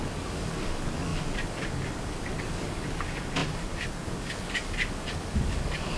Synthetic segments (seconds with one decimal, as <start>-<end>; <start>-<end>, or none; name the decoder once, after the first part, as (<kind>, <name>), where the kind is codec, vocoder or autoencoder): 0.0-6.0 (codec, DAC)